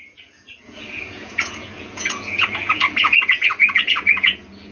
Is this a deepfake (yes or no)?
yes